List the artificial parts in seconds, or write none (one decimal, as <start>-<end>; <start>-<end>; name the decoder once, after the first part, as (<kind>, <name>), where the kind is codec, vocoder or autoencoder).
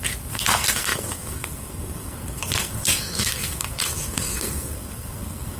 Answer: 0.0-5.6 (codec, SNAC)